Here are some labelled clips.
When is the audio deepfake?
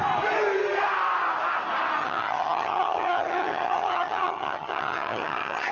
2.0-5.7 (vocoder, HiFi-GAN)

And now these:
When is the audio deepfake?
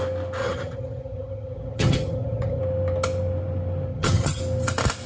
0.4-2.6 (vocoder, HiFi-GAN); 3.9-4.4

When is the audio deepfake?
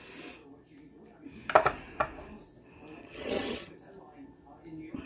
3.0-3.7 (vocoder, HiFi-GAN)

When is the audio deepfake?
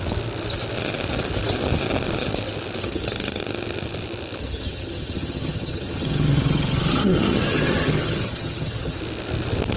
2.8-3.4 (vocoder, HiFi-GAN); 4.4-9.0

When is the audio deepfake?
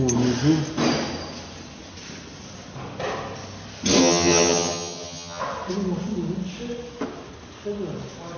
4.0-5.4 (vocoder, HiFi-GAN)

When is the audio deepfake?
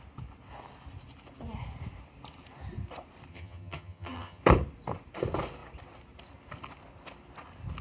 3.3-4.4 (vocoder, HiFi-GAN)